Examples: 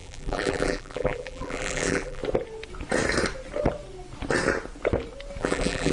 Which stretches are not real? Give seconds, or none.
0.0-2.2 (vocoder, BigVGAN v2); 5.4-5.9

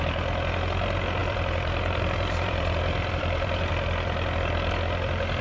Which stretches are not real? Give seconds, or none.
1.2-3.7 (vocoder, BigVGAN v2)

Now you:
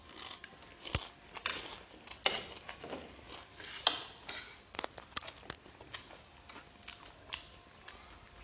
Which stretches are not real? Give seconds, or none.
1.5-3.8 (vocoder, BigVGAN v2)

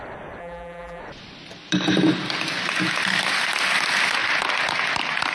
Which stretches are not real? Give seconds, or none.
0.4-1.0 (vocoder, BigVGAN v2)

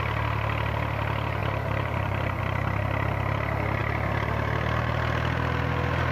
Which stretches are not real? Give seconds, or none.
1.4-2.4 (vocoder, BigVGAN v2)